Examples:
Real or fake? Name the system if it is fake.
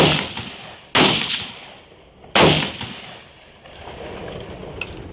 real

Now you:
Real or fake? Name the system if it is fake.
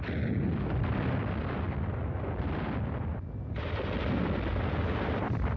real